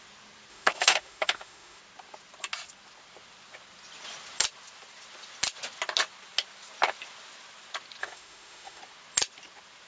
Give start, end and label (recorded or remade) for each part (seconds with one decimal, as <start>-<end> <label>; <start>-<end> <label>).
0.0-0.5 recorded; 0.5-1.8 remade; 1.8-8.0 recorded; 8.0-8.8 remade; 8.8-9.9 recorded